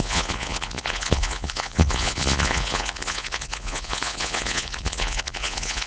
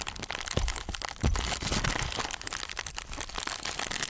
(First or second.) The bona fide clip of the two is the second